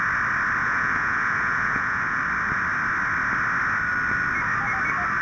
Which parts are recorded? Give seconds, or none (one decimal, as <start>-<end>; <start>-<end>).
0.0-0.6; 2.2-5.2